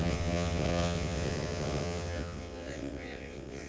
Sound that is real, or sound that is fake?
fake